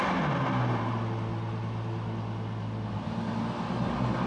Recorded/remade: recorded